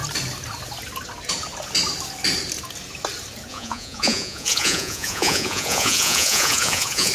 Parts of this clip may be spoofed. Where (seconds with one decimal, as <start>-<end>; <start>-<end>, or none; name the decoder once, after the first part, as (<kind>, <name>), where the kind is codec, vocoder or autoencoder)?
3.5-7.1 (vocoder, Vocos)